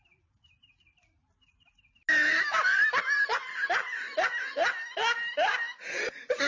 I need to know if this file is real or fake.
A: real